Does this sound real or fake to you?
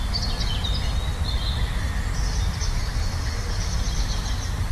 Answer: real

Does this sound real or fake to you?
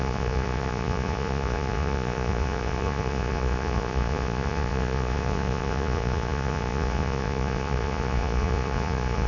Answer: fake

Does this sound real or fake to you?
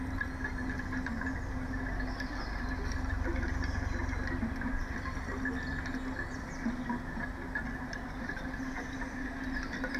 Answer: real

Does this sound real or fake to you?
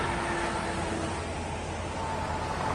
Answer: real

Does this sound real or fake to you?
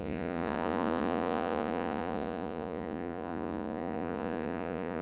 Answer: fake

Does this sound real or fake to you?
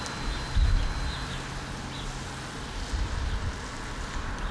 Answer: real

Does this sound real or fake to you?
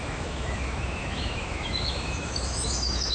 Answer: fake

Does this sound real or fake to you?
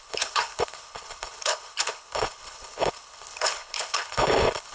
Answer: fake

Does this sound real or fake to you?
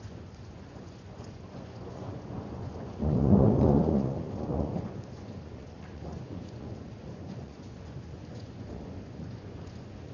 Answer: fake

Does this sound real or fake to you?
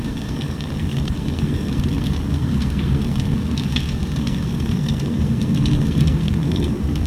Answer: fake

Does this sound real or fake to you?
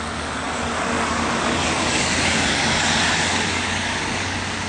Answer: fake